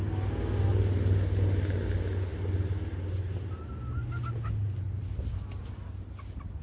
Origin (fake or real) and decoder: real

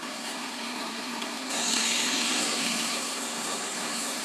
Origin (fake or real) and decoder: fake, codec, SNAC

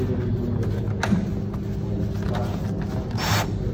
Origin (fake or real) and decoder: real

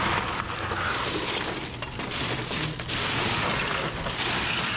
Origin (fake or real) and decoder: real